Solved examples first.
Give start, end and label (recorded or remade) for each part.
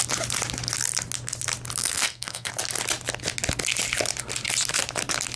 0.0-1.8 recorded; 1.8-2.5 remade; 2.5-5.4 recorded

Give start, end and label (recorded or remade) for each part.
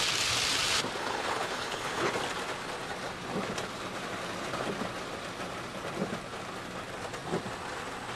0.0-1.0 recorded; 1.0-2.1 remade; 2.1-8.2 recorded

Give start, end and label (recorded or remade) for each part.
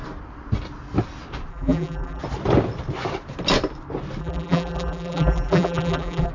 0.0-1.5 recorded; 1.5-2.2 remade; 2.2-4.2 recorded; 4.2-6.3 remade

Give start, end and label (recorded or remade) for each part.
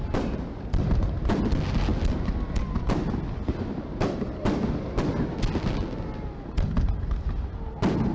0.0-0.9 remade; 0.9-8.1 recorded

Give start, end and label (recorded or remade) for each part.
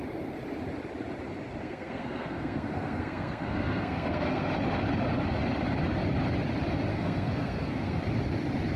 0.0-1.6 recorded; 1.6-4.5 remade; 4.5-6.9 recorded; 6.9-8.0 remade; 8.0-8.8 recorded